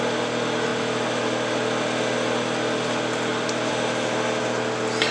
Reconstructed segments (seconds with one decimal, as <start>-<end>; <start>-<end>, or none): none